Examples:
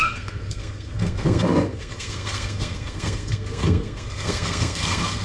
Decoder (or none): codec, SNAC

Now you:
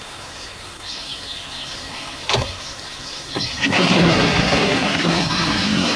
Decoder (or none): codec, SNAC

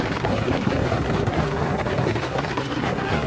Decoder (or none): codec, SNAC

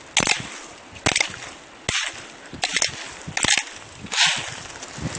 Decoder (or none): none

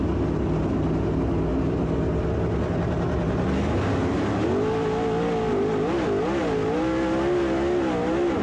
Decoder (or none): none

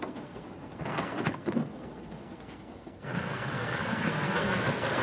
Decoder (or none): codec, SNAC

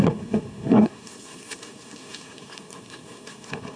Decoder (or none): codec, SNAC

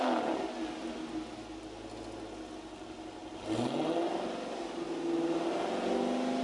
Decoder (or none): none